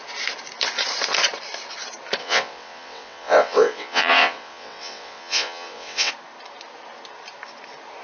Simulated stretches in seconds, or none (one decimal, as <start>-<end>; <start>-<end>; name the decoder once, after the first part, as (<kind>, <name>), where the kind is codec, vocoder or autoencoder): 2.2-6.1 (vocoder, WaveNeXt)